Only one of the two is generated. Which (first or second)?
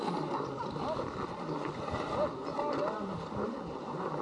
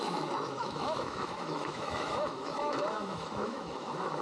second